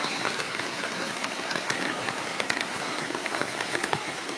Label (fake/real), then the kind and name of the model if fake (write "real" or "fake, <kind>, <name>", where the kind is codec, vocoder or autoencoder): fake, codec, SNAC